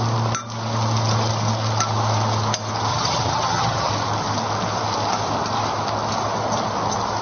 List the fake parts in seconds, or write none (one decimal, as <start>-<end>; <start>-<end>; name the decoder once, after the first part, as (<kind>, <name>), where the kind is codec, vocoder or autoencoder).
2.9-3.9 (vocoder, HiFi-GAN)